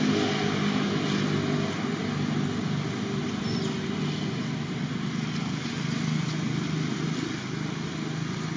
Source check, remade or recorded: recorded